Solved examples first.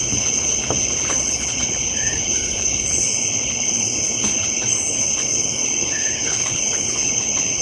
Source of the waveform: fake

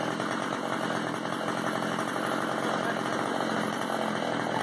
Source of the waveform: real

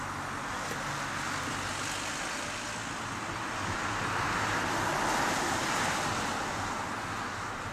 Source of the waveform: real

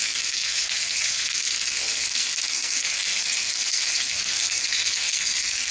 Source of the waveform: fake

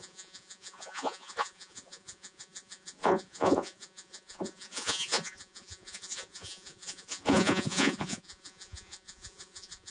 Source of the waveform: fake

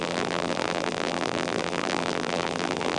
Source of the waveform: fake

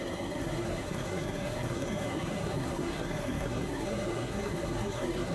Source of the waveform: fake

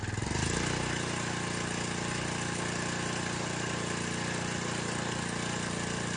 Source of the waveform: real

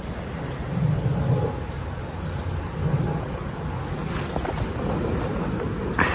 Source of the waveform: real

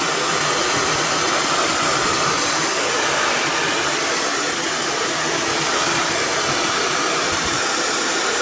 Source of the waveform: real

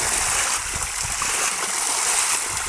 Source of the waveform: real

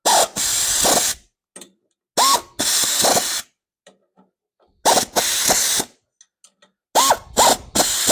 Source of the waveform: real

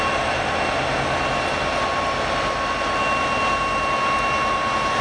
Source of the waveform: real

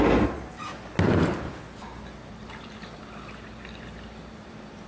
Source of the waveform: real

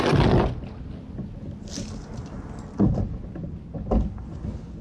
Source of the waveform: real